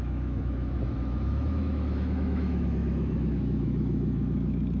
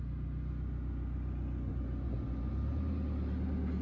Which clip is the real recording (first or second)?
second